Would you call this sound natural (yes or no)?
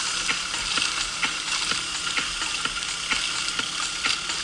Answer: yes